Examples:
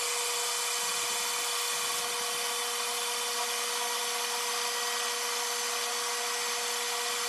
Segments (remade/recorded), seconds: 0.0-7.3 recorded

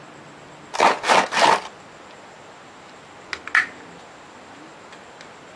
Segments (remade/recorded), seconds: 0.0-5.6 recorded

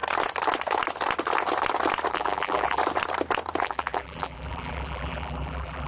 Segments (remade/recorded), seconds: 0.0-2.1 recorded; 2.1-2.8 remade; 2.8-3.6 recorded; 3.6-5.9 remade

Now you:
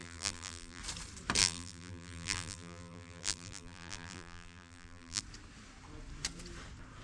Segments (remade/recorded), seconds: 0.0-0.8 remade; 0.8-1.4 recorded; 1.4-5.2 remade; 5.2-7.0 recorded

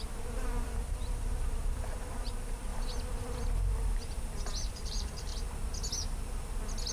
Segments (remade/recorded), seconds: 0.0-2.7 remade; 2.7-4.7 recorded; 4.7-5.3 remade; 5.3-6.9 recorded